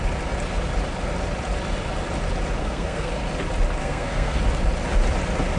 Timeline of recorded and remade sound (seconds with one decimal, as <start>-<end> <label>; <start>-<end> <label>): 0.0-2.6 recorded; 2.6-3.1 remade; 3.1-3.8 recorded; 3.8-4.4 remade; 4.4-5.6 recorded